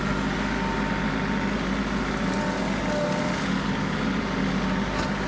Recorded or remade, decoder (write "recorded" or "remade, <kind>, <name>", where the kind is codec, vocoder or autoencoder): recorded